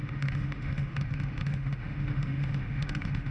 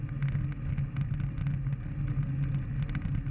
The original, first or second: second